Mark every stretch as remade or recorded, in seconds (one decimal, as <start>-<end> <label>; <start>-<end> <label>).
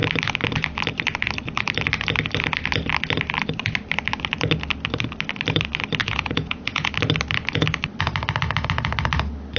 0.0-6.0 recorded; 6.0-6.9 remade; 6.9-9.6 recorded